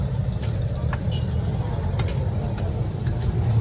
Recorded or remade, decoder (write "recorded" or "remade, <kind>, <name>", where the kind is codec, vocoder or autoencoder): recorded